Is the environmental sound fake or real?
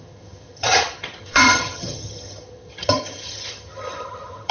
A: fake